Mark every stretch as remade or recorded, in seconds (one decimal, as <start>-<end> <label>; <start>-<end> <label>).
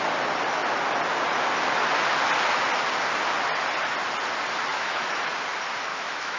0.0-4.7 recorded; 4.7-5.3 remade; 5.3-5.9 recorded; 5.9-6.4 remade